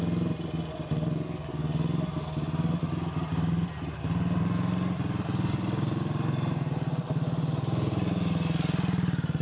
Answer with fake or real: real